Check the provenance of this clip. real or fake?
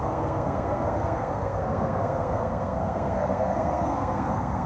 fake